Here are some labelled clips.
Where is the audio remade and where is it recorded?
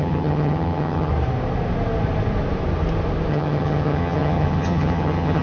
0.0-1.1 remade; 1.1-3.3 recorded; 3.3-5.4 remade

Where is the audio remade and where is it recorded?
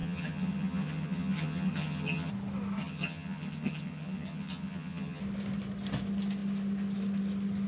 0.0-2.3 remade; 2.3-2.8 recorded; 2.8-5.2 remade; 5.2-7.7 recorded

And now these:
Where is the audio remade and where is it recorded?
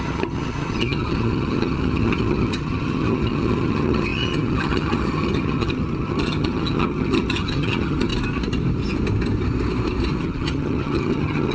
0.0-8.1 remade; 8.1-10.2 recorded; 10.2-11.5 remade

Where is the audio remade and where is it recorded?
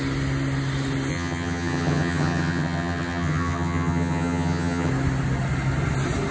0.0-1.1 recorded; 1.1-4.9 remade; 4.9-6.3 recorded